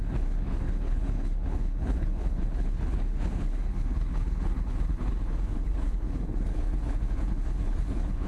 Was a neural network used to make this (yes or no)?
yes